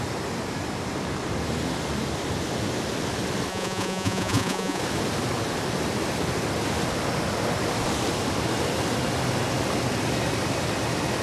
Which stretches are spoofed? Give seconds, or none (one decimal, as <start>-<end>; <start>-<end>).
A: 3.5-4.8